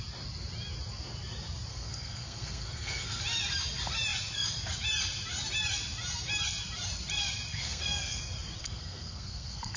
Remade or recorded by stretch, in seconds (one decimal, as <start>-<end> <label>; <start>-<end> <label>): 0.0-1.7 recorded; 1.7-3.2 remade; 3.2-7.5 recorded; 7.5-8.2 remade; 8.2-8.6 recorded; 8.6-9.8 remade